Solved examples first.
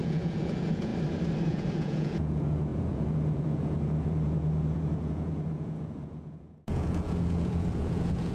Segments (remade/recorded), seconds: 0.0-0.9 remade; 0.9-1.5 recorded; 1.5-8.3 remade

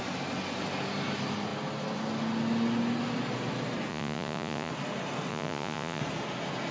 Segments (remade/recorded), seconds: 0.0-3.9 recorded; 3.9-4.7 remade; 4.7-5.3 recorded; 5.3-6.0 remade; 6.0-6.7 recorded

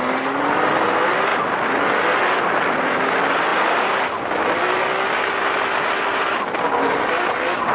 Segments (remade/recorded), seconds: 0.0-7.7 recorded

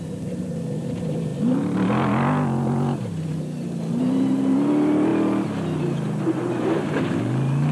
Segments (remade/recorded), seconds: 0.0-7.7 recorded

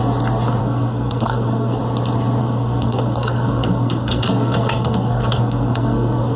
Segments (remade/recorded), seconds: 0.0-0.6 recorded; 0.6-1.8 remade; 1.8-2.4 recorded; 2.4-6.4 remade

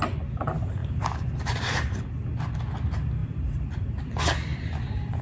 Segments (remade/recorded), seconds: 0.0-0.8 recorded; 0.8-2.0 remade; 2.0-3.2 recorded; 3.2-4.0 remade; 4.0-4.5 recorded; 4.5-5.2 remade